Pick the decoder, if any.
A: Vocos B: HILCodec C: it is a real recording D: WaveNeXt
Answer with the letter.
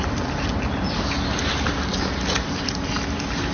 C